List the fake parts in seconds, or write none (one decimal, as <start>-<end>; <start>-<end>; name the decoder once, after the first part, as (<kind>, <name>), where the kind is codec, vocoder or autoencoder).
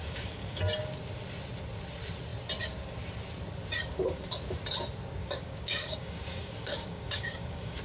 0.0-0.6 (codec, DAC); 5.2-7.8